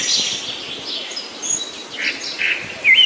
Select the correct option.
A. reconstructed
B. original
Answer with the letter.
B